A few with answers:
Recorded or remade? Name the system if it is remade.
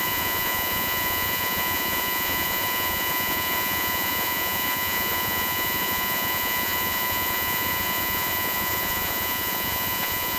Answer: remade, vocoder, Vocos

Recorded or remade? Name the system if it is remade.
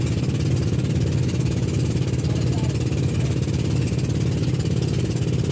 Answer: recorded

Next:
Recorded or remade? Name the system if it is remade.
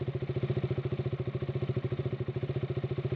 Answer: recorded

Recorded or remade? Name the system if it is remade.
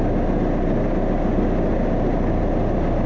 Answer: recorded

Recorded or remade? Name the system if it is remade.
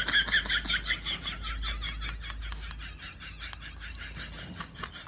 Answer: recorded